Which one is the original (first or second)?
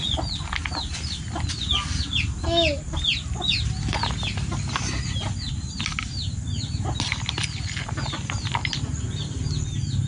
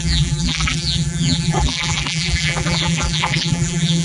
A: first